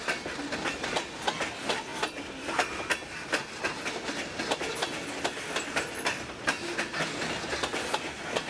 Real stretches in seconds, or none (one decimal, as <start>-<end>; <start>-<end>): 0.0-8.5